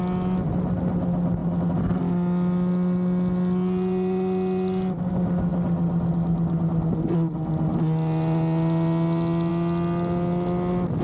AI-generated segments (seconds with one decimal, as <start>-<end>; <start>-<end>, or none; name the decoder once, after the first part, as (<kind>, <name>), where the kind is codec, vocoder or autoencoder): none